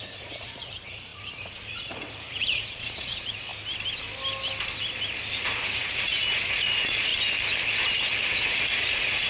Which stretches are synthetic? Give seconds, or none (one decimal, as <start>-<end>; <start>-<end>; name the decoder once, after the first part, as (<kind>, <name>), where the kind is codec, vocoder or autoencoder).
0.0-3.5 (vocoder, Vocos); 5.4-7.1; 7.9-9.3

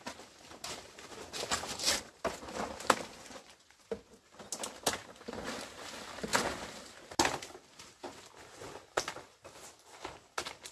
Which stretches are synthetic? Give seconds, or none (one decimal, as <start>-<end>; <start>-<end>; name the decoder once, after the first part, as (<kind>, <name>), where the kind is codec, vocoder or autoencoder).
3.1-3.8 (vocoder, Vocos)